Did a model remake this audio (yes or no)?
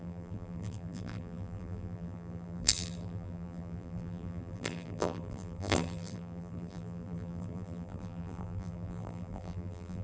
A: yes